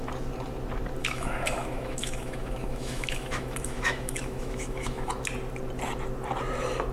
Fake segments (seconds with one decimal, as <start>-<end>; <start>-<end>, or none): 1.0-5.1